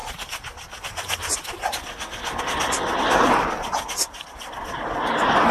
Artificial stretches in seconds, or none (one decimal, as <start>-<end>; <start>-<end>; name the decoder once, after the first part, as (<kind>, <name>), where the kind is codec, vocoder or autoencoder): none